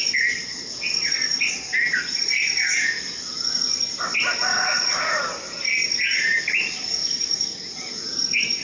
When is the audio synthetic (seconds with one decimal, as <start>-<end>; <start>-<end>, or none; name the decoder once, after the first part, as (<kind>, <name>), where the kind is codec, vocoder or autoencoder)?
4.5-5.2 (vocoder, Vocos); 7.0-8.2